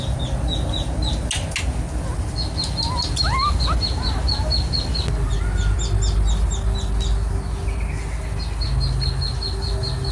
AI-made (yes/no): no